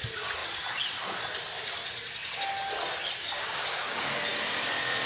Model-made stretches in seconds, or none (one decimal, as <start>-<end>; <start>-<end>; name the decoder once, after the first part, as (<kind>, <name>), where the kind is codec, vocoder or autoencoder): 3.2-4.1 (codec, DAC)